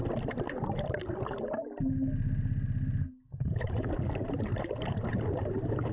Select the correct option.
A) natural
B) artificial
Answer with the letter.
A